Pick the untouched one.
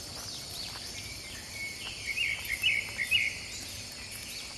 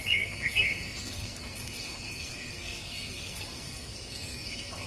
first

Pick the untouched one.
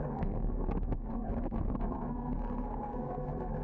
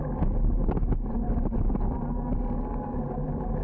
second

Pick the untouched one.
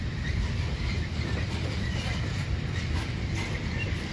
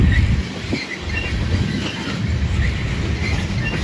second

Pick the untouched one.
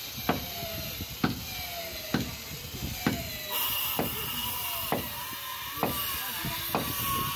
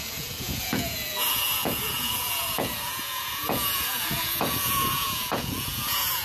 first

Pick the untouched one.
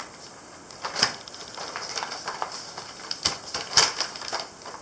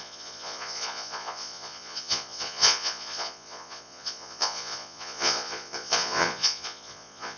first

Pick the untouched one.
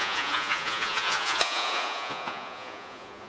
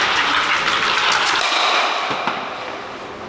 second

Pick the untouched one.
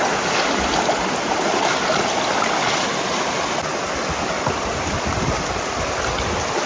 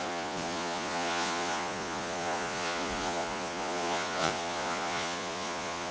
first